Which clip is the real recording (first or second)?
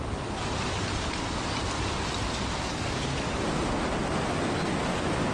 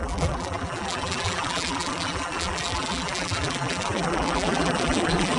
first